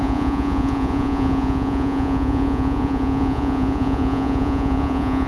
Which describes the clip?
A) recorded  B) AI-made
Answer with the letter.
B